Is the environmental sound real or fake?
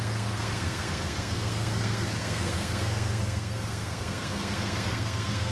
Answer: fake